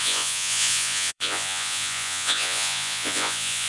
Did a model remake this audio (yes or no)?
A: yes